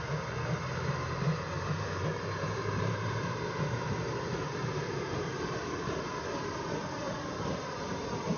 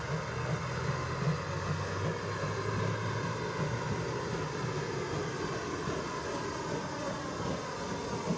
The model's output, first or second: first